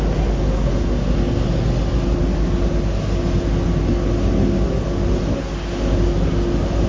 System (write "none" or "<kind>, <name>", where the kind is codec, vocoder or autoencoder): none